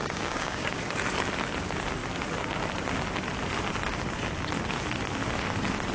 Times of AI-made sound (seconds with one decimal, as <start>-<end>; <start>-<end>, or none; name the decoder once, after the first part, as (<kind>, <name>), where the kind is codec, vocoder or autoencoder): 0.0-0.8 (codec, DAC)